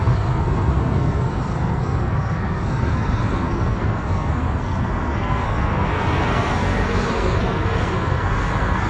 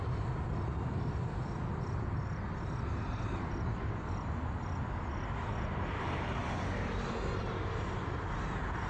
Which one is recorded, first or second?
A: second